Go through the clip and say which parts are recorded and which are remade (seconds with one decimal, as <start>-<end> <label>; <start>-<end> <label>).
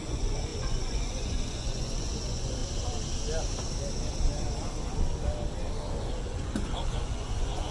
0.0-2.6 remade; 2.6-6.0 recorded; 6.0-7.7 remade